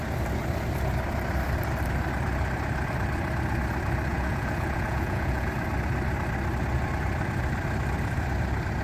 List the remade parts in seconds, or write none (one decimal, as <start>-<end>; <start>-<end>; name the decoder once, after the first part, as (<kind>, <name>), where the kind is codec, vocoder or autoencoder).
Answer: 4.1-5.5 (vocoder, Vocos)